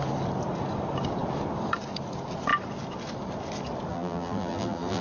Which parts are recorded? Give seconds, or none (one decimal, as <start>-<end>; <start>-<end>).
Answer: 0.0-3.9